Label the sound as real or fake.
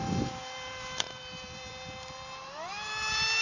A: fake